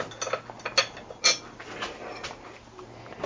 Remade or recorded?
recorded